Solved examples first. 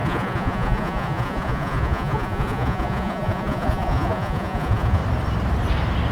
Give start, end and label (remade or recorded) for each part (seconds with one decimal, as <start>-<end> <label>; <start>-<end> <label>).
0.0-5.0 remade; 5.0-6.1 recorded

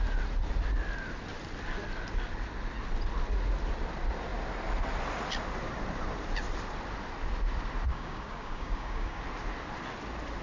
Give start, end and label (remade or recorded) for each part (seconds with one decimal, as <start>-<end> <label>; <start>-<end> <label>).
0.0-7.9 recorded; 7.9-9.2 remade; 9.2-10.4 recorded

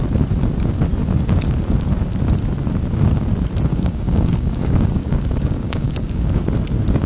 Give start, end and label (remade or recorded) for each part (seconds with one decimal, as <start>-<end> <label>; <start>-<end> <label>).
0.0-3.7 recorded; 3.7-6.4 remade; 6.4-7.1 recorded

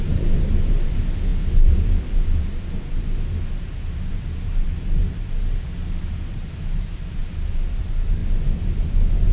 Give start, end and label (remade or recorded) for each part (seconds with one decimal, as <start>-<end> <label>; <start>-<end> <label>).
0.0-9.3 remade

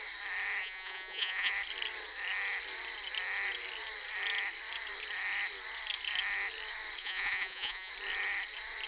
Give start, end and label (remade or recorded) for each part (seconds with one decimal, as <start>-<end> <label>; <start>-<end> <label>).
0.0-0.6 recorded; 0.6-1.5 remade; 1.5-7.0 recorded; 7.0-7.9 remade; 7.9-8.9 recorded

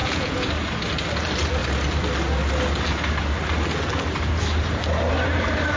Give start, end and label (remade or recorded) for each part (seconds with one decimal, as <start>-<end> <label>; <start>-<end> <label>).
0.0-0.5 remade; 0.5-5.8 recorded

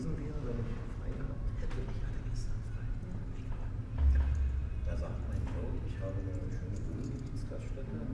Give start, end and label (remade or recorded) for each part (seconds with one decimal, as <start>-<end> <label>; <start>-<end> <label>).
0.0-8.1 recorded